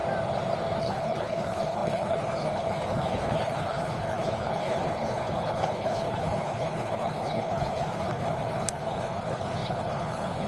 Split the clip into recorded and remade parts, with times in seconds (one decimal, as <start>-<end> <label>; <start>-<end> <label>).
0.0-0.8 recorded; 0.8-10.5 remade